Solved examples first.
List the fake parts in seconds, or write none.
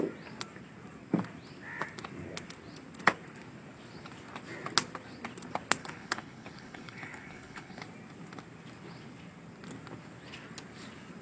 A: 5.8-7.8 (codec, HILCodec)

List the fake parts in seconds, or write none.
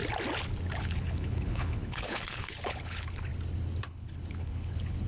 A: 0.8-3.3 (codec, HILCodec); 3.8-5.1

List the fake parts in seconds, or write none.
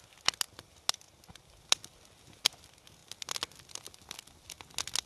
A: none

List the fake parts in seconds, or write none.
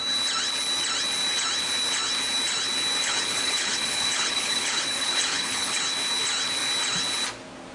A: 3.0-5.8 (codec, HILCodec)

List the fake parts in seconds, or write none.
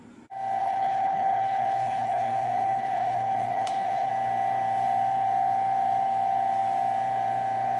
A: 0.6-4.1 (codec, HILCodec)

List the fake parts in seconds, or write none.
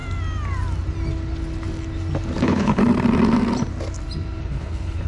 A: 2.4-2.8 (codec, HILCodec); 4.4-5.1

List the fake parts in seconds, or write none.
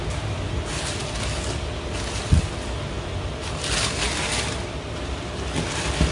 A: none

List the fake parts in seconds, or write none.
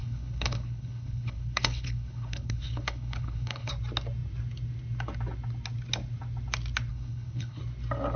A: 0.0-3.7 (codec, HILCodec); 6.9-7.6